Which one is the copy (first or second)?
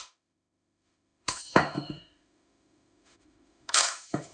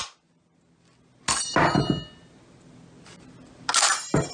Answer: first